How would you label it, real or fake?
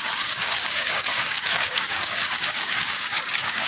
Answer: fake